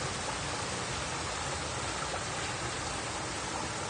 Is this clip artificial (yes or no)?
no